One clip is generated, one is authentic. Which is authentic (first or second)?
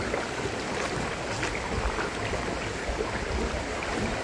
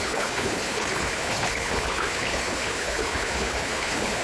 first